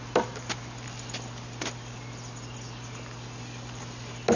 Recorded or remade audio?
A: recorded